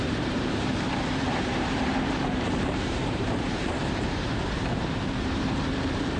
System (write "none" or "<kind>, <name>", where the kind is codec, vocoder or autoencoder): vocoder, BigVGAN v2